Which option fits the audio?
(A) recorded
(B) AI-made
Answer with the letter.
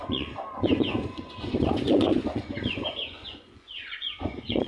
B